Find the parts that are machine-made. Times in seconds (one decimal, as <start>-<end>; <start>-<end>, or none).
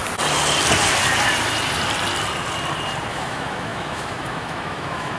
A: 3.1-5.2